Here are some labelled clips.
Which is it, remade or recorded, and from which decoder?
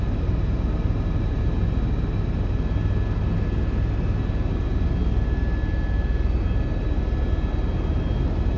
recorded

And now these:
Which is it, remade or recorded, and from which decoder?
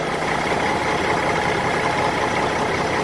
recorded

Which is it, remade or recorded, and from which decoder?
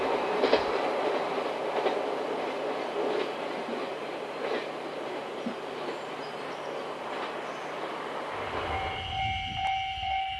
recorded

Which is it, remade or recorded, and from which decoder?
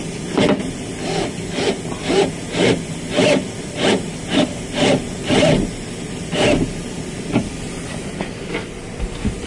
recorded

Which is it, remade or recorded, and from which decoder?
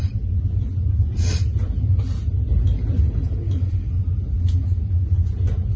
recorded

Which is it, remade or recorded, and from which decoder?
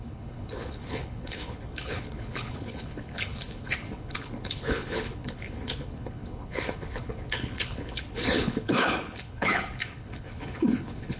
remade, codec, HILCodec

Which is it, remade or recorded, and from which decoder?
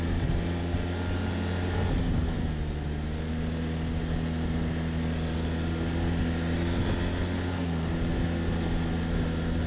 recorded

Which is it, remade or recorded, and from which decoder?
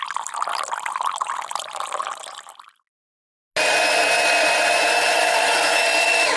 recorded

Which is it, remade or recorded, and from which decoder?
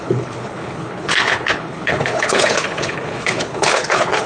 remade, codec, HILCodec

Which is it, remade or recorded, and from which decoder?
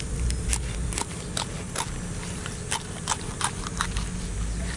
recorded